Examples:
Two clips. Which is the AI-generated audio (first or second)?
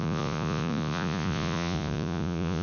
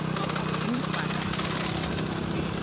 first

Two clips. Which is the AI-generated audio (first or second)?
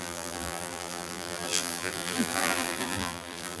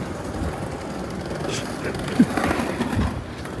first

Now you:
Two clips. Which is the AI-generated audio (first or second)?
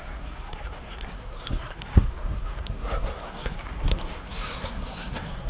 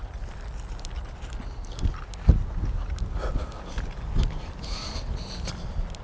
first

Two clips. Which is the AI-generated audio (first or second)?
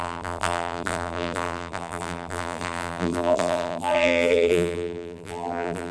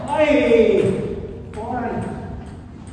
first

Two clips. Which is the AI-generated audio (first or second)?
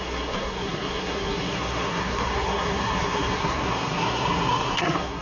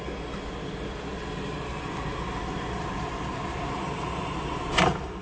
first